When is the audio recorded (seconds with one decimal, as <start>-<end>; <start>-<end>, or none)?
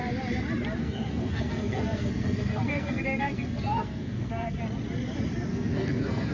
0.0-0.8; 4.6-5.5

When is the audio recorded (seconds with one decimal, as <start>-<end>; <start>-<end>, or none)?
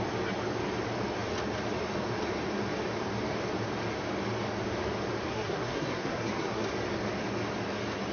0.0-5.3; 6.6-8.1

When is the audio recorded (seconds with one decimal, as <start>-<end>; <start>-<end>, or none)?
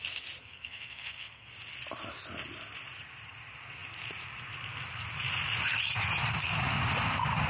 0.0-0.4; 1.5-7.5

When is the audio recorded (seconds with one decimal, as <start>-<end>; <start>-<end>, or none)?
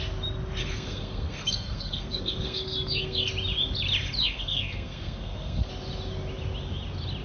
0.0-0.6; 3.3-4.2; 5.7-7.2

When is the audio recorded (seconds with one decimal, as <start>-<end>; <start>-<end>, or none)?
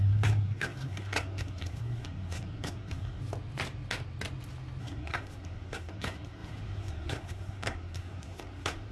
3.2-4.8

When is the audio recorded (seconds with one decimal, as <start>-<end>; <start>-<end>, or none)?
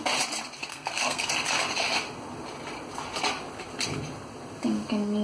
0.0-0.7; 1.3-5.2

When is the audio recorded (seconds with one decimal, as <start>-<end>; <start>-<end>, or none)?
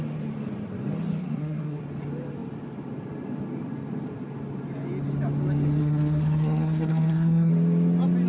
0.0-1.2; 1.8-5.8; 7.5-8.3